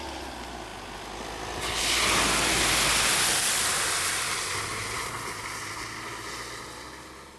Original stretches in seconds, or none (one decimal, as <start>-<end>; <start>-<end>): 0.0-7.4